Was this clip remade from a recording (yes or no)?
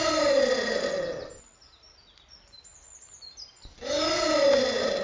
no